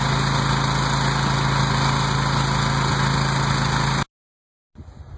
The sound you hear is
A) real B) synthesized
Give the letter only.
A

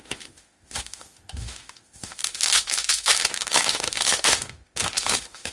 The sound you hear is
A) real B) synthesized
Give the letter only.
B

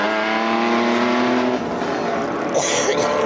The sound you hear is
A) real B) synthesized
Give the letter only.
A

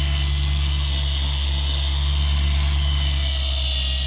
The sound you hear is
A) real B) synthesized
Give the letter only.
A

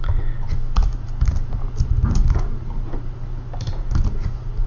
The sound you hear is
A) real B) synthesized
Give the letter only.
A